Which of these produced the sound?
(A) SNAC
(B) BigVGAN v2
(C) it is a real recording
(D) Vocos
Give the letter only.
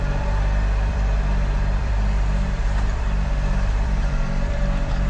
B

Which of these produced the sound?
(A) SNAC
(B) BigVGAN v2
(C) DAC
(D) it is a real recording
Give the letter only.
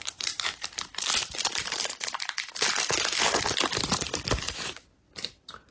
B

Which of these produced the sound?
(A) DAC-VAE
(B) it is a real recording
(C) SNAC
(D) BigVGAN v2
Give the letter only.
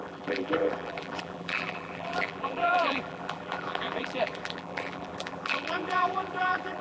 D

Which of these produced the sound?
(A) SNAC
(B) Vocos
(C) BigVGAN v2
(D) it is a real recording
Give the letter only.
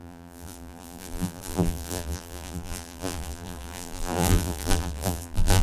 C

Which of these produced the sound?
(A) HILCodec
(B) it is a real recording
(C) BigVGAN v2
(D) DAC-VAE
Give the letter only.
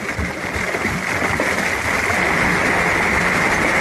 B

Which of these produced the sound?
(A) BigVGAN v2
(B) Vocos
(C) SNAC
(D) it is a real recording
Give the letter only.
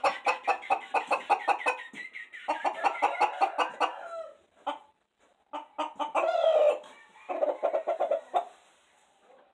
D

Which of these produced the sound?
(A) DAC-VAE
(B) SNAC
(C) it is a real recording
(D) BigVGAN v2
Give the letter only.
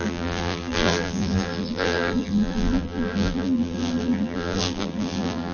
D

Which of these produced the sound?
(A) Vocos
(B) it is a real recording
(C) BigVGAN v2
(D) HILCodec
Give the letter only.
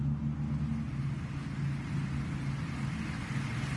B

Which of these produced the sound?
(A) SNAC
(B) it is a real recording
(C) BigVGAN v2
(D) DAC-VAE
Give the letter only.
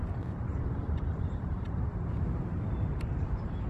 C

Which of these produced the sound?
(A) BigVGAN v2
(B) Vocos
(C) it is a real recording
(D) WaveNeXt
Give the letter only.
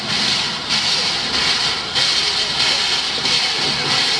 C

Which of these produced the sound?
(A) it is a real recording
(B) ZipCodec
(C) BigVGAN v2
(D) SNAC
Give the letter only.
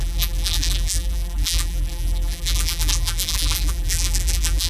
C